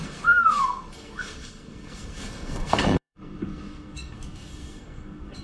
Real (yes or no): no